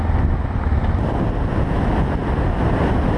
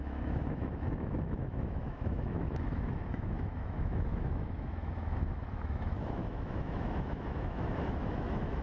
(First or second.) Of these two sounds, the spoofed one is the second